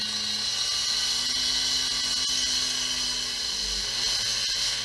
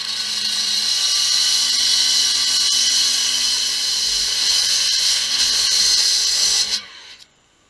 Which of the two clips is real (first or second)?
first